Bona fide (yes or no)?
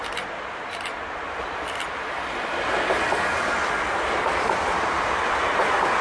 no